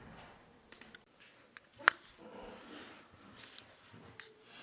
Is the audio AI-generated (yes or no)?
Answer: no